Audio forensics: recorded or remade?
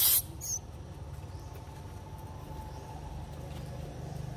recorded